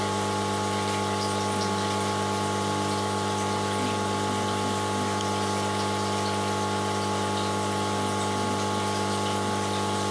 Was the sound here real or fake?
real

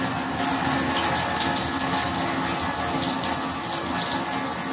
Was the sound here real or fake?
real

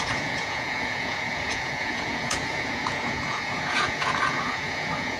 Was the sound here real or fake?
fake